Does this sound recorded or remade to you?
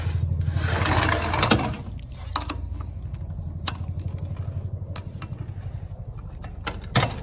recorded